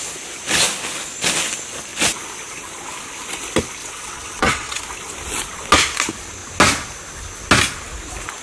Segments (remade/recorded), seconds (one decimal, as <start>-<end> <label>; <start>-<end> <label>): 0.0-3.8 recorded; 3.8-4.8 remade; 4.8-8.4 recorded